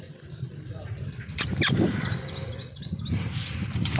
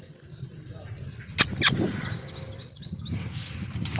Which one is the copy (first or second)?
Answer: first